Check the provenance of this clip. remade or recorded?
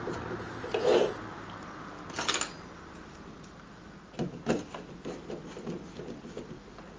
recorded